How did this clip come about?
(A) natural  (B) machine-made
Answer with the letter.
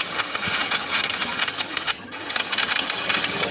B